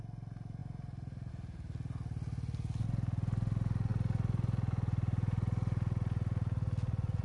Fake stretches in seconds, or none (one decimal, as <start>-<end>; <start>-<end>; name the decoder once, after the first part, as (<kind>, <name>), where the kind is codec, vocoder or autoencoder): none